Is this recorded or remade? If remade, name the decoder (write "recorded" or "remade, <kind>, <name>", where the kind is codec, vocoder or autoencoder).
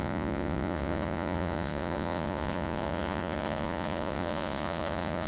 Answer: remade, vocoder, Vocos